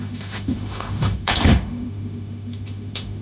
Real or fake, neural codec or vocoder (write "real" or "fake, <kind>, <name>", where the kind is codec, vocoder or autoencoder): fake, autoencoder, DAC-VAE